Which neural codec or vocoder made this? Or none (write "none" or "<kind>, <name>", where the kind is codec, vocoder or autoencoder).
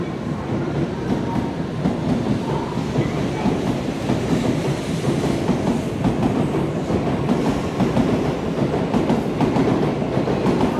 none